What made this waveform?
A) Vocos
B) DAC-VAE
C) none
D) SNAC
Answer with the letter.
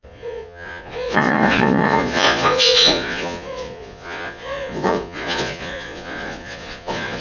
A